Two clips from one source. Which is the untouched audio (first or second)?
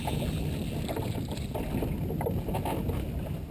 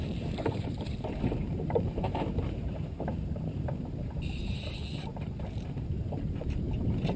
first